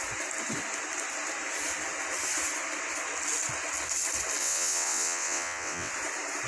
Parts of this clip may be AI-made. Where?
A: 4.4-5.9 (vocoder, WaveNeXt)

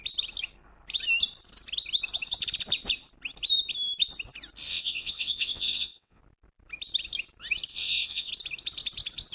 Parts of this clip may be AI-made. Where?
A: 4.7-6.2 (vocoder, WaveNeXt); 7.7-8.3

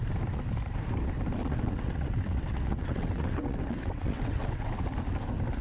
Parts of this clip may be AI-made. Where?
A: 1.4-4.8 (vocoder, WaveNeXt)

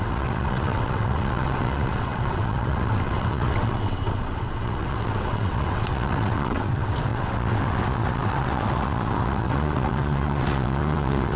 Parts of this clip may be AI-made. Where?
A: 0.0-11.4 (vocoder, WaveNeXt)

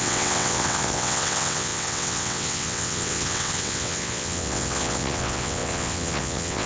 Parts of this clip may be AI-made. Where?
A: 0.0-6.7 (vocoder, WaveNeXt)

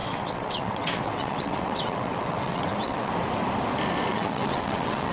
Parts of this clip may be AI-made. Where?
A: 0.0-3.1 (vocoder, WaveNeXt); 4.1-5.1

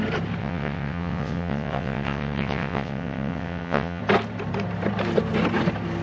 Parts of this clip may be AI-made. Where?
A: 0.4-4.0 (vocoder, WaveNeXt)

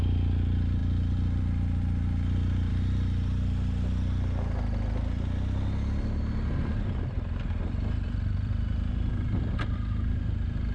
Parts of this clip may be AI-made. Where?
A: none